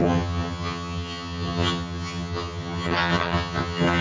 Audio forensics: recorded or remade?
remade